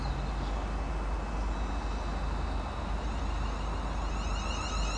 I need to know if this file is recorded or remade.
recorded